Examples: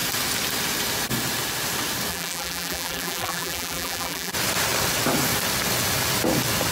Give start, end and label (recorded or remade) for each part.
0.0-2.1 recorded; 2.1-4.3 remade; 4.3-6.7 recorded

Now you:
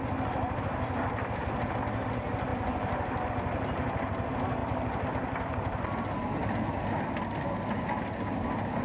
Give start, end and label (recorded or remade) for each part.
0.0-2.5 recorded; 2.5-3.3 remade; 3.3-4.6 recorded; 4.6-5.1 remade; 5.1-8.8 recorded

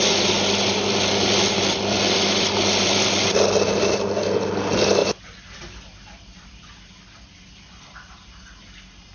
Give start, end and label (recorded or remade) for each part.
0.0-1.6 recorded; 1.6-2.6 remade; 2.6-5.0 recorded; 5.0-5.6 remade; 5.6-9.1 recorded

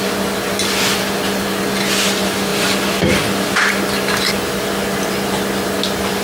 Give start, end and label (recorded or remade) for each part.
0.0-2.5 recorded; 2.5-3.7 remade; 3.7-6.2 recorded

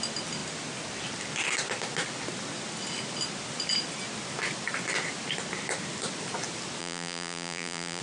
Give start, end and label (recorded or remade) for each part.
0.0-6.8 recorded; 6.8-8.0 remade

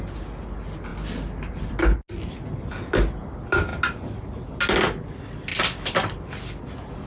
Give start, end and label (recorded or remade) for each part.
0.0-0.9 recorded; 0.9-1.7 remade; 1.7-5.5 recorded; 5.5-6.6 remade; 6.6-7.1 recorded

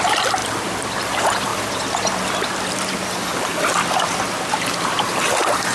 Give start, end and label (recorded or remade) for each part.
0.0-0.4 remade; 0.4-1.0 recorded; 1.0-1.5 remade; 1.5-4.9 recorded; 4.9-5.7 remade

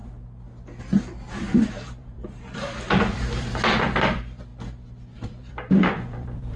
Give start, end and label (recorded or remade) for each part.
0.0-1.0 recorded; 1.0-6.6 remade